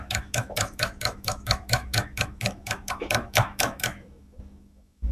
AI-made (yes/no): yes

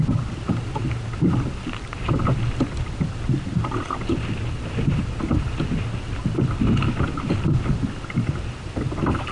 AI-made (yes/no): no